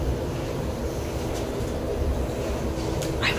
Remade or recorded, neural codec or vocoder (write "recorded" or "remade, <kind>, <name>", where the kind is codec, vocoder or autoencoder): recorded